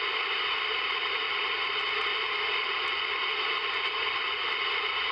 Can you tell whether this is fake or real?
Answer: real